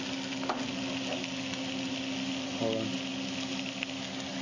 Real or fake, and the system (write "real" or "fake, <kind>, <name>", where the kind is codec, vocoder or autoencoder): real